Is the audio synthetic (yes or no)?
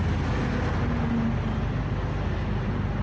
no